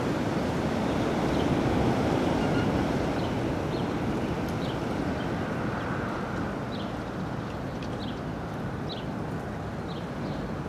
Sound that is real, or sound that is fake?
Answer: real